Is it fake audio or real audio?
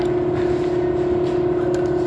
real